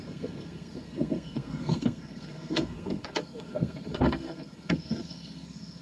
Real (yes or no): no